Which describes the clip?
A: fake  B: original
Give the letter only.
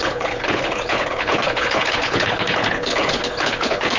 A